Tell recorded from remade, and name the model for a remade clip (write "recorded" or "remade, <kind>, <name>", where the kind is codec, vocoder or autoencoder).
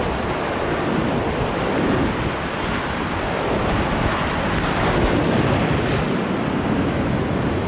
recorded